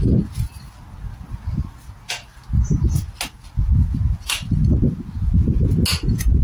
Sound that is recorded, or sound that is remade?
recorded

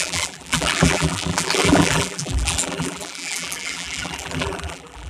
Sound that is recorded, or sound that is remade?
remade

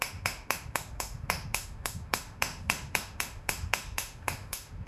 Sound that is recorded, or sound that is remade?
remade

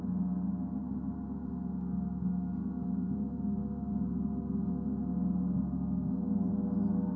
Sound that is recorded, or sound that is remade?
recorded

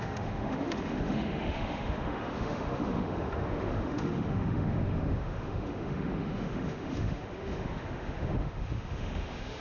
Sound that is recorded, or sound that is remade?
remade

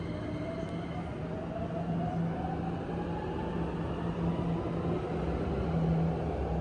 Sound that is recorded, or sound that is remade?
recorded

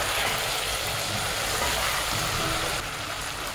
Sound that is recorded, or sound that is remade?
recorded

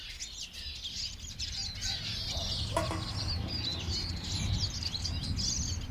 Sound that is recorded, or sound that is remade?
recorded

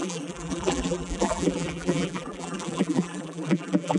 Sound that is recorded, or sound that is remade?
remade